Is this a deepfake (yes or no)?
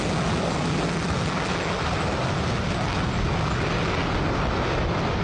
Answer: no